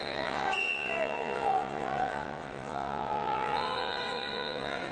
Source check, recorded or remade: remade